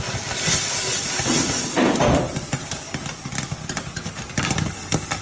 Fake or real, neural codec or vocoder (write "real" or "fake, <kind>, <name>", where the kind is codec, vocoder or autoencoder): real